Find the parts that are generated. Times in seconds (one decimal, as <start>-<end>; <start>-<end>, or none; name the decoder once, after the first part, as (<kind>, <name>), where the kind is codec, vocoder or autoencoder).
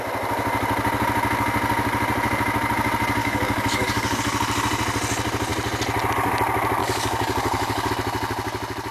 3.2-4.2 (codec, DAC); 6.8-7.9